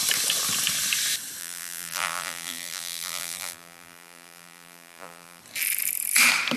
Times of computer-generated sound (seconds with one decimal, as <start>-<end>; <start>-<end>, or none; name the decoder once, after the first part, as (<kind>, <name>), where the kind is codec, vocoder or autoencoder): 1.4-5.4 (vocoder, BigVGAN v2)

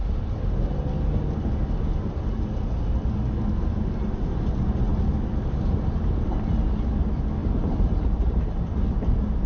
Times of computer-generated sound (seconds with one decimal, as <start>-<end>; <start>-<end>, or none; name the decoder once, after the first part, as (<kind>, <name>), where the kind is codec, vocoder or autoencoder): 7.4-8.4 (vocoder, BigVGAN v2)